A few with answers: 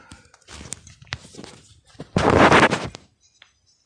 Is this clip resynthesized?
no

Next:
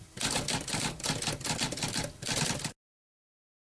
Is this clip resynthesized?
no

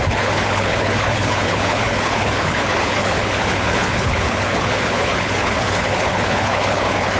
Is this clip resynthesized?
yes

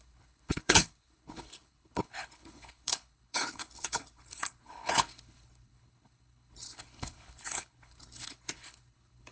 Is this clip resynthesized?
yes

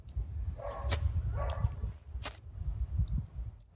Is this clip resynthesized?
no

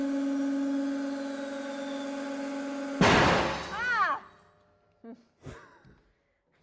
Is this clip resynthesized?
no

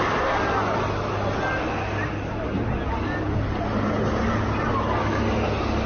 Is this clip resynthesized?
no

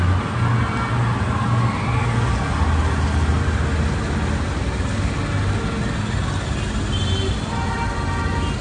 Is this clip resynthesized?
no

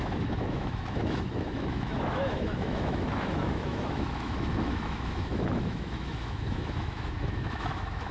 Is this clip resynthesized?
yes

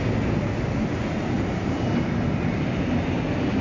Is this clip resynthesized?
no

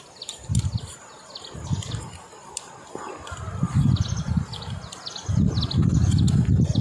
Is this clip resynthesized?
no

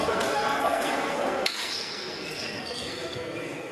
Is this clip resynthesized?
yes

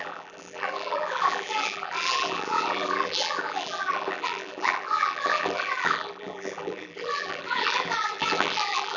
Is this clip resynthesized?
yes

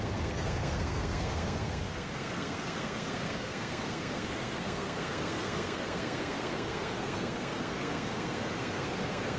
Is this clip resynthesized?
yes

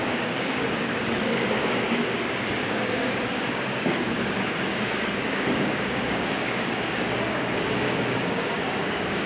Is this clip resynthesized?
yes